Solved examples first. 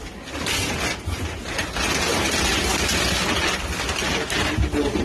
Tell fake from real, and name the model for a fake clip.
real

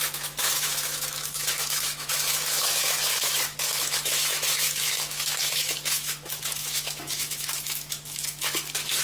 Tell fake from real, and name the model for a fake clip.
fake, autoencoder, DAC-VAE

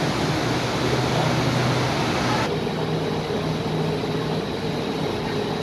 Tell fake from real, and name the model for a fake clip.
real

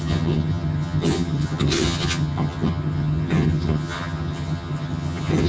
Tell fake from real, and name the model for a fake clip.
fake, vocoder, HiFi-GAN